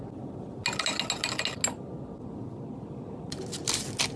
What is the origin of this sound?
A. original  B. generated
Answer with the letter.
A